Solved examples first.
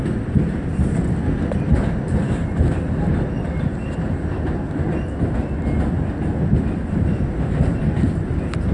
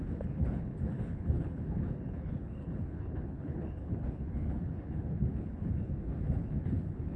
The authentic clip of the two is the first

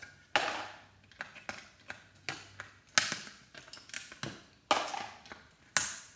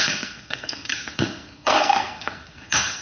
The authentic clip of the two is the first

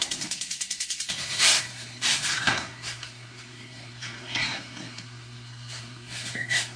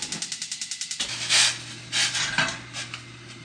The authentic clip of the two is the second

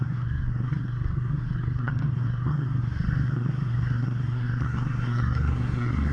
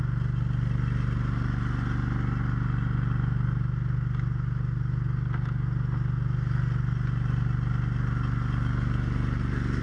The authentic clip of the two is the second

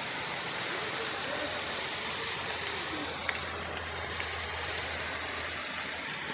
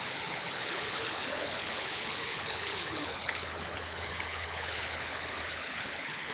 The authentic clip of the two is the first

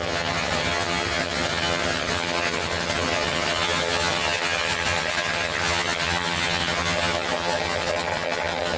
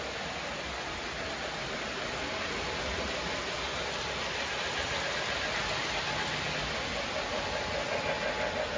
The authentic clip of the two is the second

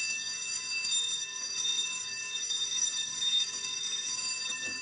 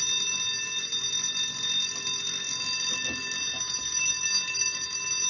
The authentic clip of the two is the second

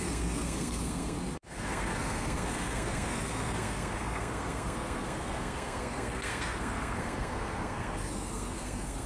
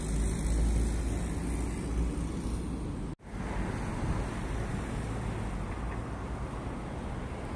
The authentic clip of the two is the second